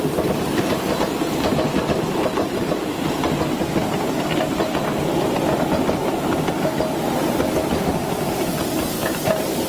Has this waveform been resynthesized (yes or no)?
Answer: no